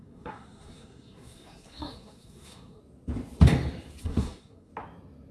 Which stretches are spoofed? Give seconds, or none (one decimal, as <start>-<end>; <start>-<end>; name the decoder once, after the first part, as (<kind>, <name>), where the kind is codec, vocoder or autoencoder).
0.0-2.8 (codec, SNAC); 4.0-4.7